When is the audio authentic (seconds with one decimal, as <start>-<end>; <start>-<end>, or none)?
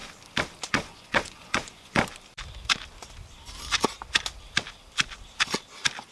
0.0-0.7; 2.0-6.1